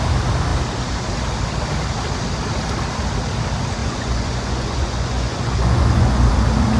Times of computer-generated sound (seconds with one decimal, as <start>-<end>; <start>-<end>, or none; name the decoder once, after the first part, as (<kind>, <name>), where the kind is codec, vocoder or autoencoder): 3.8-6.3 (vocoder, Vocos)

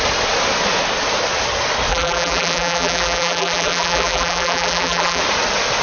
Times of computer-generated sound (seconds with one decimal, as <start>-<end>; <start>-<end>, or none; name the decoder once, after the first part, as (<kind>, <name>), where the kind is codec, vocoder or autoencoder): 1.9-5.2 (vocoder, BigVGAN v2)